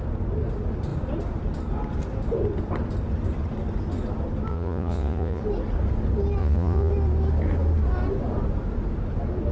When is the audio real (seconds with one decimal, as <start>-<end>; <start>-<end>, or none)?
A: 0.0-4.5; 5.4-6.4; 6.9-9.5